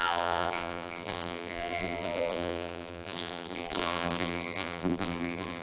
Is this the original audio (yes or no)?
no